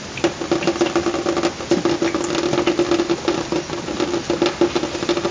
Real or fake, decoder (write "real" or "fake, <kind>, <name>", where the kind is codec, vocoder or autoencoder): real